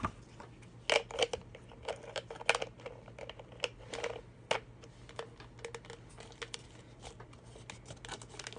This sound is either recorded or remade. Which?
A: recorded